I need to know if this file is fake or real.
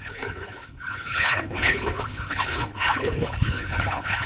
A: fake